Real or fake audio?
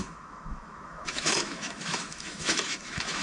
fake